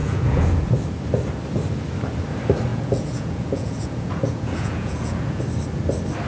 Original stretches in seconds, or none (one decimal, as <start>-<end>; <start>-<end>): 0.7-2.7; 5.4-6.3